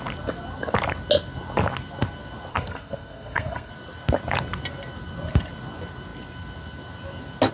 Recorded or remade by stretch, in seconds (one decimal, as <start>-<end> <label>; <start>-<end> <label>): 0.0-2.5 recorded; 2.5-3.7 remade; 3.7-7.5 recorded